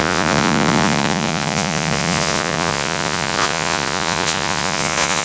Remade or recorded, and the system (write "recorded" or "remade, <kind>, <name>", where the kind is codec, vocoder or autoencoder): remade, vocoder, Vocos